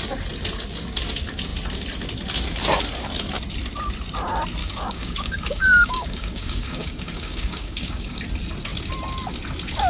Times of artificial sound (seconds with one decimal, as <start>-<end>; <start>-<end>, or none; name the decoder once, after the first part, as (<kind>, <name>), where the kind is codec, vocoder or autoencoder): 4.6-8.2 (codec, DAC)